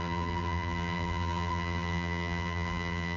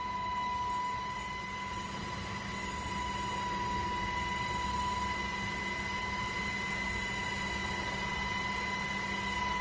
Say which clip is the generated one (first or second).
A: first